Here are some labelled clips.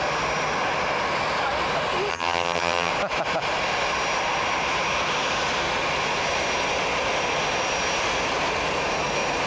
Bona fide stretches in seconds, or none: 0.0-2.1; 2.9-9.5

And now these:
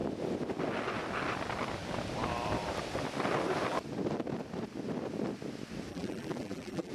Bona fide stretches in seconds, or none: 0.0-5.9

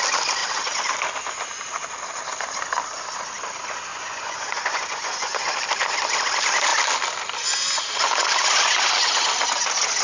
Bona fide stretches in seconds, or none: 0.0-3.9; 5.5-10.0

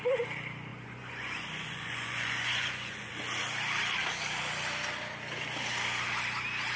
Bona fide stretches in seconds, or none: 0.0-0.7; 3.1-6.8

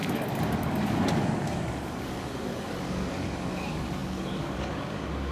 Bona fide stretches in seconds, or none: none